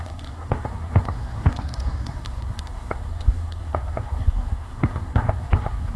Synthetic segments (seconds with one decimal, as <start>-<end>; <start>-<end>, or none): 0.0-6.0